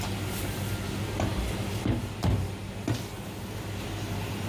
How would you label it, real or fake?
real